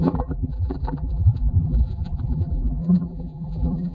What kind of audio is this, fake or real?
fake